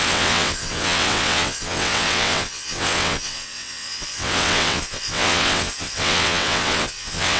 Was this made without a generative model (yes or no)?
no